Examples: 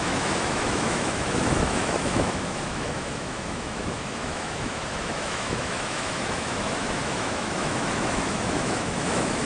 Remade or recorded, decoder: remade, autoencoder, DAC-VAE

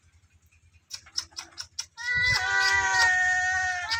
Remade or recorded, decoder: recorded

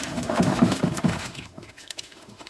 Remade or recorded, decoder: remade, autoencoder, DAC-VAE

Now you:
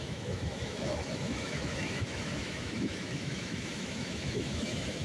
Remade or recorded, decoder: remade, autoencoder, DAC-VAE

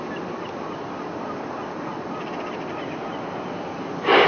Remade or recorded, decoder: recorded